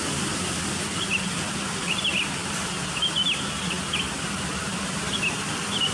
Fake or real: fake